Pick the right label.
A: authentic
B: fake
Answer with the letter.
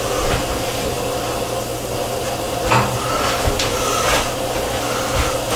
A